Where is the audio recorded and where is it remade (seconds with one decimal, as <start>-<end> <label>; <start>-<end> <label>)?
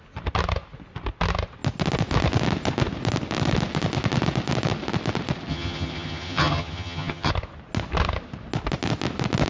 0.0-5.5 recorded; 5.5-7.3 remade; 7.3-9.5 recorded